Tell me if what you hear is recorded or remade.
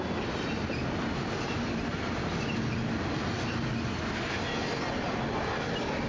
recorded